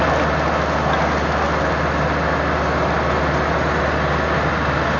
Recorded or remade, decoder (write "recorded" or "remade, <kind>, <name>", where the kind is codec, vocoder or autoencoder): recorded